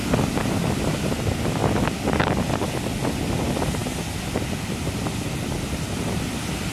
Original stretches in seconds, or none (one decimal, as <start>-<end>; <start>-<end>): 0.0-6.7